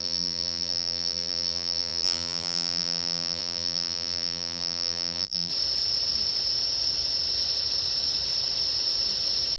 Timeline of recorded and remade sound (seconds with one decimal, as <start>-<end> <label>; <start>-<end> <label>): 0.0-5.5 remade; 5.5-9.6 recorded

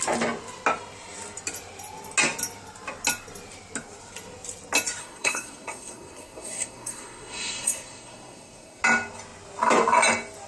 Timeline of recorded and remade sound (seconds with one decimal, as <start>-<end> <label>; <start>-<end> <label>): 0.0-5.0 recorded; 5.0-8.8 remade; 8.8-10.5 recorded

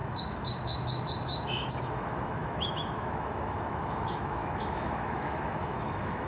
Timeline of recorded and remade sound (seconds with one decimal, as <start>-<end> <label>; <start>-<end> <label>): 0.0-6.3 remade

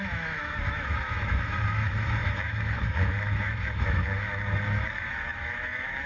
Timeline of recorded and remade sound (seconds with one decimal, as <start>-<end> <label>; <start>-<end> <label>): 0.0-6.1 remade

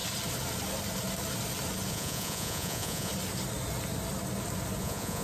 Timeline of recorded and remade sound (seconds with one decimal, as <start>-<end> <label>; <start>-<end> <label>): 0.0-1.9 recorded; 1.9-3.1 remade; 3.1-4.8 recorded; 4.8-5.2 remade

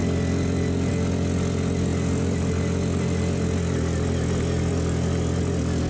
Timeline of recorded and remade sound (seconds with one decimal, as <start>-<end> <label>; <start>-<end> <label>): 0.0-5.9 recorded

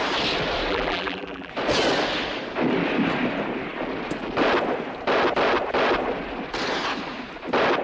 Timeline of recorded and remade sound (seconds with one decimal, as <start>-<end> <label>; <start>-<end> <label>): 0.0-0.7 recorded; 0.7-1.5 remade; 1.5-7.8 recorded

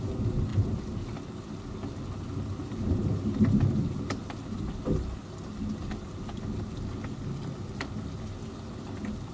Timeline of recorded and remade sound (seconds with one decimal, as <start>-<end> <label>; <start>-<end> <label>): 0.0-9.3 recorded